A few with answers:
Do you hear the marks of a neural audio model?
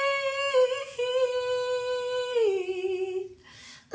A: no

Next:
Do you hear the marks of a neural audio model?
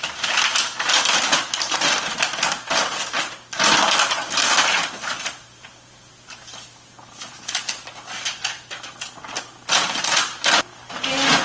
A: no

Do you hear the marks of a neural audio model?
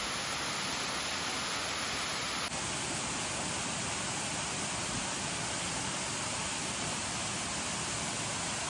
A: no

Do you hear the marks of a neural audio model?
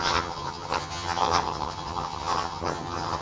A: yes